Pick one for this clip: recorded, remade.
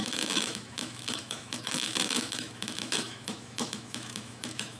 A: remade